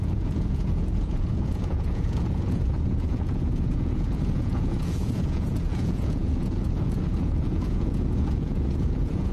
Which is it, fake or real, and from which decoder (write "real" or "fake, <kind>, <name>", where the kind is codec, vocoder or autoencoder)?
fake, vocoder, Vocos